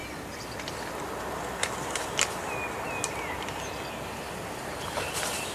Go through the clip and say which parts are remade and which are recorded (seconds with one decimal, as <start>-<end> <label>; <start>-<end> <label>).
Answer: 0.0-5.5 recorded